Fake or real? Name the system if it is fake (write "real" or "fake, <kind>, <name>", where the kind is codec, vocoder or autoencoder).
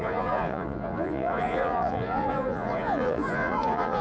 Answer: fake, vocoder, Vocos